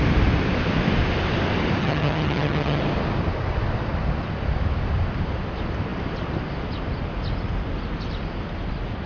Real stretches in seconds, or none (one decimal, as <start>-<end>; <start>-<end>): 0.0-1.8; 2.8-9.1